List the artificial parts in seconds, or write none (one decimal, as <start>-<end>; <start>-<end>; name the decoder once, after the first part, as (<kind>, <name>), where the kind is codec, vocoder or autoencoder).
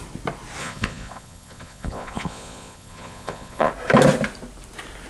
0.6-3.7 (vocoder, Vocos)